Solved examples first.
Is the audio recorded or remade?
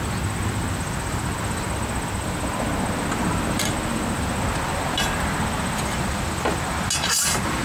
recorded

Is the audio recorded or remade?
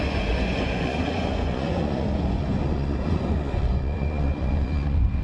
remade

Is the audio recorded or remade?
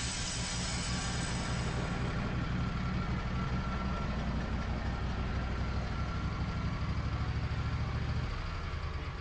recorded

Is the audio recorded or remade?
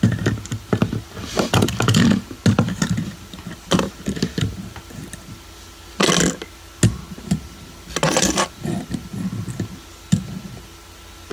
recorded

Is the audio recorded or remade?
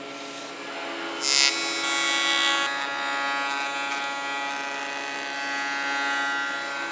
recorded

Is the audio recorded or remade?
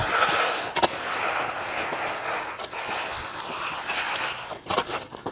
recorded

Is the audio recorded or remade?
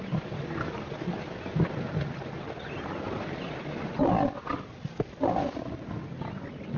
recorded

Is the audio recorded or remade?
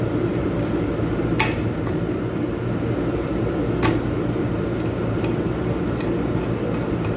remade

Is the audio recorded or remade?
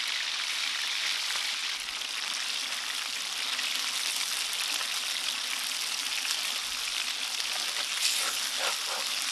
recorded